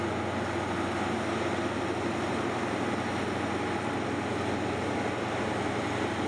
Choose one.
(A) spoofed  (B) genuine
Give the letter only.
B